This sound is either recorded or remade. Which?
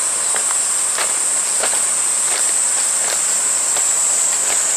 recorded